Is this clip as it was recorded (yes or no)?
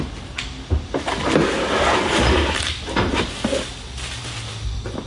yes